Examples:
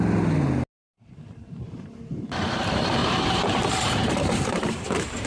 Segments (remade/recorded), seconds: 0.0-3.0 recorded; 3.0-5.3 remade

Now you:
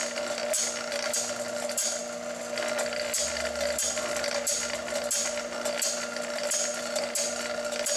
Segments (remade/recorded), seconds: 0.0-8.0 recorded

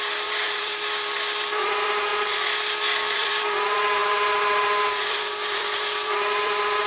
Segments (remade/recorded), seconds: 0.0-2.1 remade; 2.1-3.1 recorded; 3.1-6.9 remade

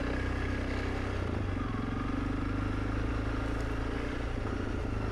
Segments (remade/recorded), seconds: 0.0-5.1 recorded

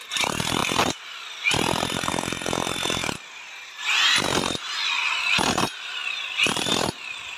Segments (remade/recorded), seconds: 0.0-7.4 recorded

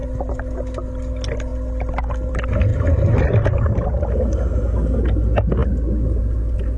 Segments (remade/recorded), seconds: 0.0-2.7 recorded; 2.7-4.1 remade; 4.1-6.8 recorded